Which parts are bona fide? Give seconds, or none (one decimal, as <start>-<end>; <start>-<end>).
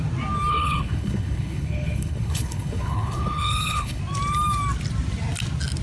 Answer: 0.0-0.5; 4.0-5.8